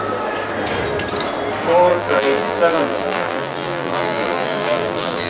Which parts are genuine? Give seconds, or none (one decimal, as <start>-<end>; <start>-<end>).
0.0-1.9